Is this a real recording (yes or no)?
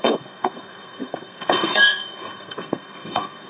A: no